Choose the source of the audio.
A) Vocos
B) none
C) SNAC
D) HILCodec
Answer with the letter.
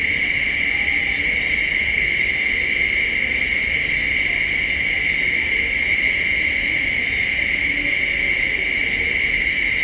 B